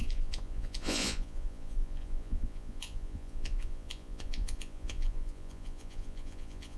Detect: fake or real fake